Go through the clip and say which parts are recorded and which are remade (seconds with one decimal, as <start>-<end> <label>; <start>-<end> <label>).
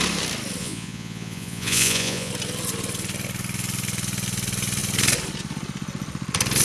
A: 0.0-0.6 recorded; 0.6-2.3 remade; 2.3-6.6 recorded